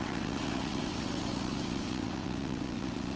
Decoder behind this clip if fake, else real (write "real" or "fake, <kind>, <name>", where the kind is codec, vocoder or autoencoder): fake, vocoder, WaveNeXt